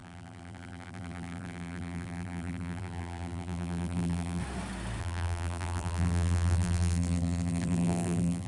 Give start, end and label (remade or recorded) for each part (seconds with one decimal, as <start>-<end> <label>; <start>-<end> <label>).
0.0-4.4 remade; 4.4-5.0 recorded; 5.0-8.5 remade